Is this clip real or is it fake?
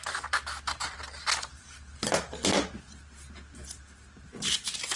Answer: real